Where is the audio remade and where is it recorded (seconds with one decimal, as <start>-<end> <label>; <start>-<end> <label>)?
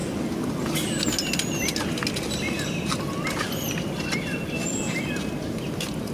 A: 0.0-6.1 recorded